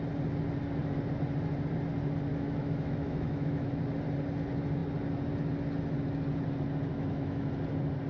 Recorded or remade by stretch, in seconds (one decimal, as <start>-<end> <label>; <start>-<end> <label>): 0.0-2.3 recorded; 2.3-3.8 remade; 3.8-6.9 recorded; 6.9-7.5 remade; 7.5-8.1 recorded